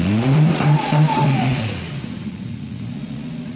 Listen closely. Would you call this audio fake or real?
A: fake